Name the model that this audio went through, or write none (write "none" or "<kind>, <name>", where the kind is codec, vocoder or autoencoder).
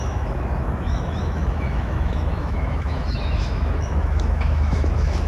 autoencoder, DAC-VAE